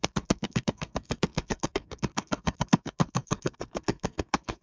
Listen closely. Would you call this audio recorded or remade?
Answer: remade